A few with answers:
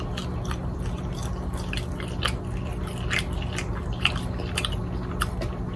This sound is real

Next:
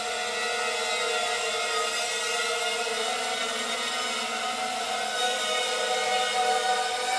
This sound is real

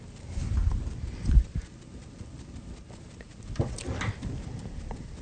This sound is real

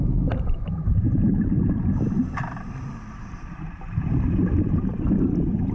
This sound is fake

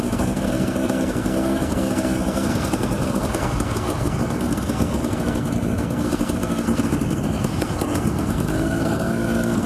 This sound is fake